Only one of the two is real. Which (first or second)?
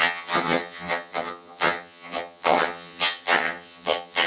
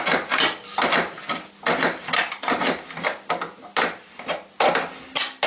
second